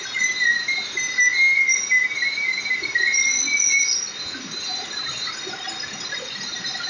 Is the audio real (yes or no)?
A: yes